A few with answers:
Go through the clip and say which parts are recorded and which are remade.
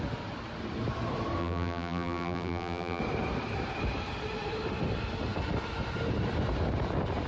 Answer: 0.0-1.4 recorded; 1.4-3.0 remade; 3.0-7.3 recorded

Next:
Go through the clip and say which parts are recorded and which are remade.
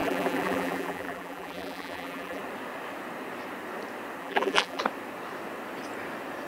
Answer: 0.0-2.4 remade; 2.4-4.2 recorded; 4.2-4.8 remade; 4.8-6.5 recorded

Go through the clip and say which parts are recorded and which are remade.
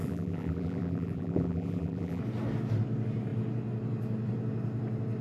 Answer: 0.0-2.2 remade; 2.2-5.2 recorded